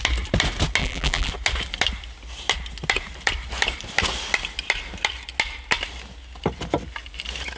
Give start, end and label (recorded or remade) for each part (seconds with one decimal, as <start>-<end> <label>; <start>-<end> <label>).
0.0-0.8 recorded; 0.8-1.3 remade; 1.3-7.6 recorded